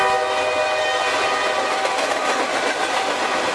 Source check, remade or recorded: recorded